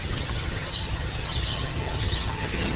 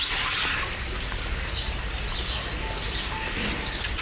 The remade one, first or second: first